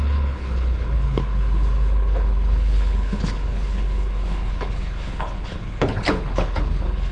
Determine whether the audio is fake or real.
fake